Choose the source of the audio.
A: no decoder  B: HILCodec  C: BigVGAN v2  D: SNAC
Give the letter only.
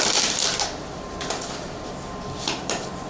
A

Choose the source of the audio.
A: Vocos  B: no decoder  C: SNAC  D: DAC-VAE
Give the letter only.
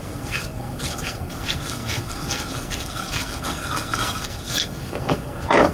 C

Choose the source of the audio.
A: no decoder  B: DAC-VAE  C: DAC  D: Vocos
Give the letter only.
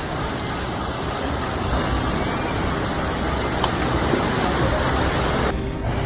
A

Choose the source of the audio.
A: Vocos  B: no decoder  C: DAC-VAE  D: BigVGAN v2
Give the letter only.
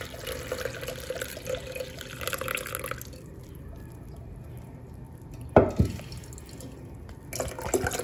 B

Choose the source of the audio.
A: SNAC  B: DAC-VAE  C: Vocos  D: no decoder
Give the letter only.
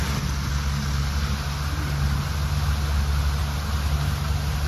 D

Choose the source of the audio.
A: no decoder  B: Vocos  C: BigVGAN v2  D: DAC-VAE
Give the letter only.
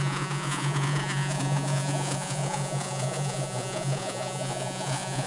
B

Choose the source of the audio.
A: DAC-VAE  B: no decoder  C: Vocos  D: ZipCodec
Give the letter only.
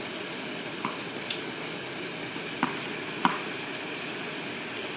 B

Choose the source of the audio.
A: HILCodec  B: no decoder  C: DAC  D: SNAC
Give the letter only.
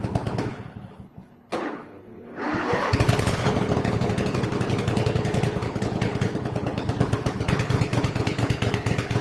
A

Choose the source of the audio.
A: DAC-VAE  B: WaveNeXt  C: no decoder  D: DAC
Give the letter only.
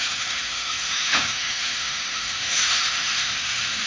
A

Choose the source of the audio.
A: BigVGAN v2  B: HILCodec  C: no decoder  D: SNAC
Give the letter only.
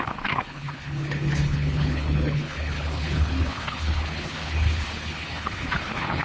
B